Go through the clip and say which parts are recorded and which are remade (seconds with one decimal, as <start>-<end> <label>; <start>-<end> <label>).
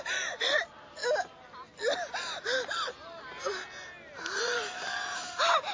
0.0-1.0 remade; 1.0-4.4 recorded; 4.4-5.7 remade